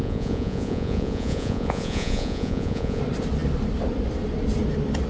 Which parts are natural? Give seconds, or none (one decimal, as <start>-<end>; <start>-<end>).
3.0-5.1